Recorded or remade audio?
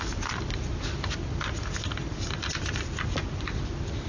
recorded